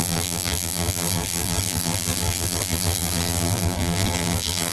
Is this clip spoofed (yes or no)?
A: yes